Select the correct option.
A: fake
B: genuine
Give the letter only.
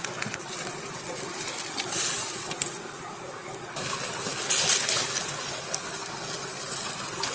B